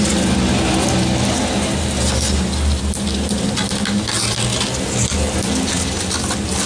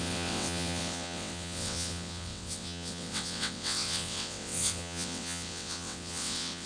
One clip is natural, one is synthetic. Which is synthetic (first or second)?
second